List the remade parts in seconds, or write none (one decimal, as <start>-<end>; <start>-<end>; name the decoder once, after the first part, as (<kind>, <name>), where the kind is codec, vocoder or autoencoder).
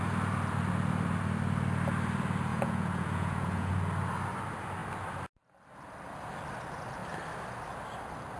2.5-3.7 (vocoder, Vocos)